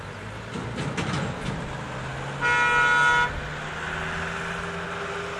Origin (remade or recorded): recorded